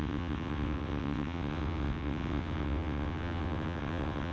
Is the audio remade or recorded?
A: remade